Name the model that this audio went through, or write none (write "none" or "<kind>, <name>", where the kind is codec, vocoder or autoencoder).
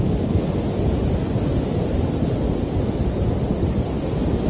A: none